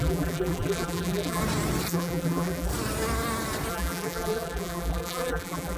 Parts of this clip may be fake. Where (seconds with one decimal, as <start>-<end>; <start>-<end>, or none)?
0.0-1.4; 1.9-2.7; 3.7-5.8